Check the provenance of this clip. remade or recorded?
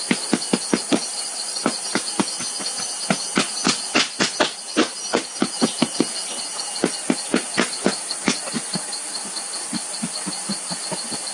recorded